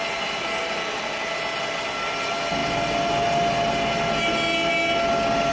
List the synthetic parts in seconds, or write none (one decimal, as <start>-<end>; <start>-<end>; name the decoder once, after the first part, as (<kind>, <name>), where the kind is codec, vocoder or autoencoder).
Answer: none